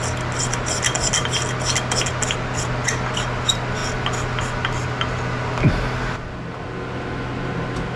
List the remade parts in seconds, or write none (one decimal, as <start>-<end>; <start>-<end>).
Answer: none